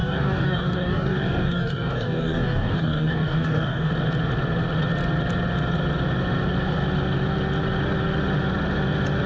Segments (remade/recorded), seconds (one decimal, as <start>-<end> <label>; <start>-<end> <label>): 0.0-3.9 remade; 3.9-9.3 recorded